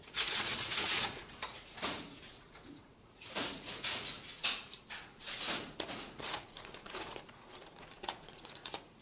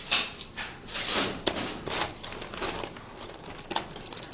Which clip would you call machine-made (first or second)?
first